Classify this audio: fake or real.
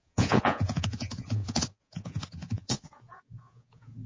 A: fake